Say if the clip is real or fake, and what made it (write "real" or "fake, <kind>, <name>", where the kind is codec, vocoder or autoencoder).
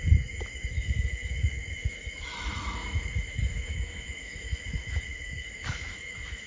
fake, autoencoder, DAC-VAE